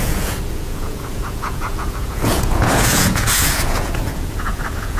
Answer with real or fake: fake